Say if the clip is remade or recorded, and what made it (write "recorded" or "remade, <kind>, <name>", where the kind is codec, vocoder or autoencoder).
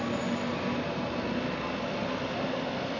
recorded